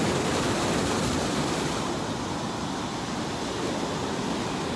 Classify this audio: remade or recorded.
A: recorded